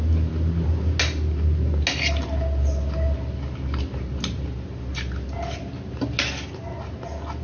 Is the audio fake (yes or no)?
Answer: no